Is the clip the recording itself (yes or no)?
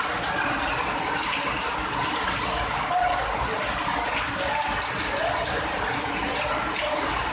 yes